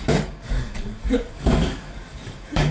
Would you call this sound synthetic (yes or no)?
yes